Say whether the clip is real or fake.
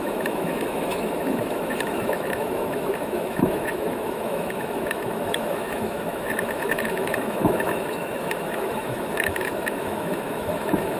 fake